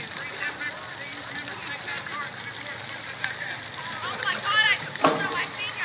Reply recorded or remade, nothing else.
recorded